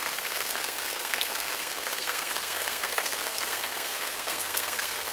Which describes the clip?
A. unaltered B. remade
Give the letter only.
B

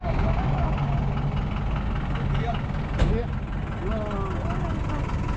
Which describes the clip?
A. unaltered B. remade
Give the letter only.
A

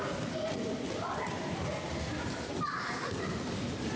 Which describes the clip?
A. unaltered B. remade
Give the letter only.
A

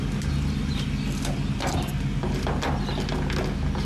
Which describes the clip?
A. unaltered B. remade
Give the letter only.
A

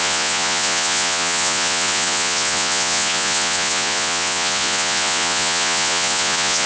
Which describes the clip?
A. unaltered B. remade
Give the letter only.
B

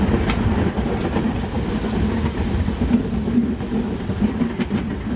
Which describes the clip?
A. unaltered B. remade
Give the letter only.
B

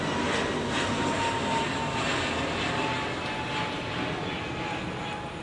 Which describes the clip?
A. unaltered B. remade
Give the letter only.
A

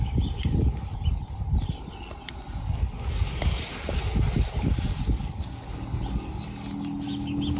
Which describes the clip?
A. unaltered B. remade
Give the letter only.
A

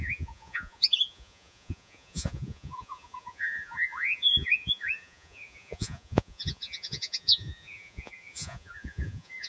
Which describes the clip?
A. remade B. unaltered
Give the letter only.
A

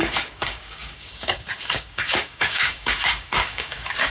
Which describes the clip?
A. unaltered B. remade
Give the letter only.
B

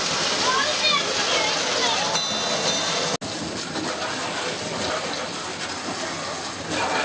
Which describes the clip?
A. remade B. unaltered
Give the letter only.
B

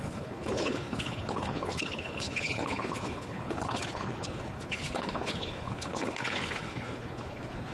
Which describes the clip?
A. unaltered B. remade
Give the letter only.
B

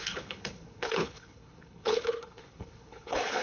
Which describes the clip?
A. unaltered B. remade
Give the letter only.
B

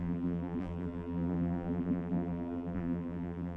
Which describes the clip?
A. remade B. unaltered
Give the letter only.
A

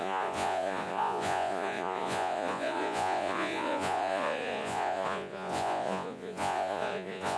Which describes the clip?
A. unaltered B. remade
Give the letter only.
B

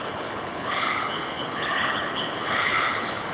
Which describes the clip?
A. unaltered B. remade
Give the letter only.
B